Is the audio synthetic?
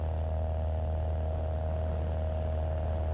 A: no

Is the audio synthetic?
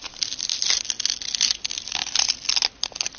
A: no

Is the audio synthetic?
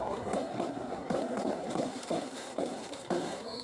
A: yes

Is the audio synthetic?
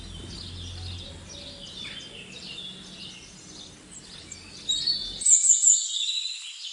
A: no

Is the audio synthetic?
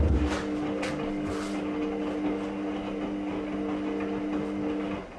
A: no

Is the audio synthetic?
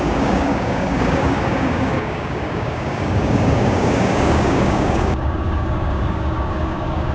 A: yes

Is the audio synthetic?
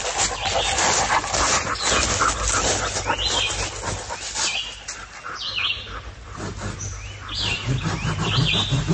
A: no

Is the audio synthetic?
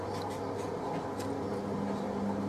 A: no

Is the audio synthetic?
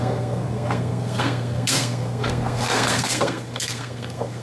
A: yes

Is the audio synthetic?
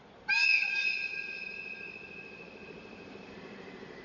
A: yes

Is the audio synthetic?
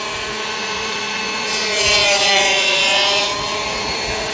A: yes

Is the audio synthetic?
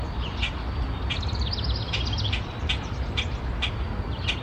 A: yes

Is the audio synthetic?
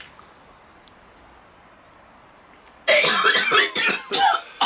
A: no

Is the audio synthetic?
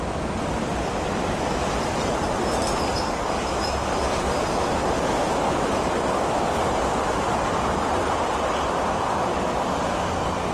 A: no